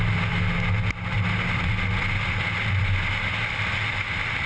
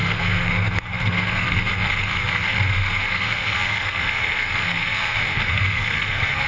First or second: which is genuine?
first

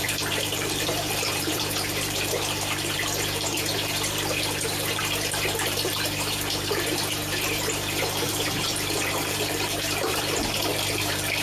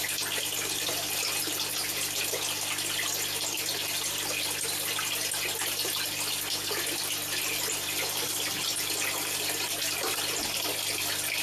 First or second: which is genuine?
second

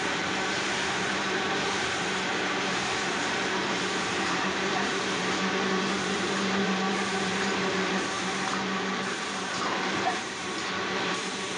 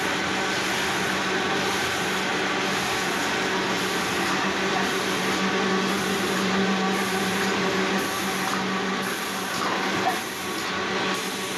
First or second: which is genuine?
second